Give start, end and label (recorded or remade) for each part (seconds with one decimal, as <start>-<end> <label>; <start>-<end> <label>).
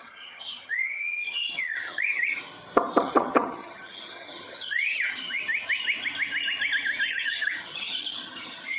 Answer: 0.0-2.4 remade; 2.4-3.0 recorded; 3.0-5.4 remade; 5.4-7.1 recorded; 7.1-8.8 remade